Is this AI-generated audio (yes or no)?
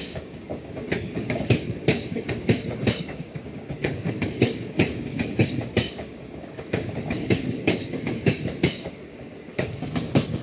yes